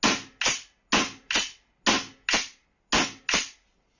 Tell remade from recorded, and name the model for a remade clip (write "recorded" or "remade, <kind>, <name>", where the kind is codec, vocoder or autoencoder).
recorded